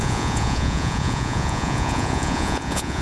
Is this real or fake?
fake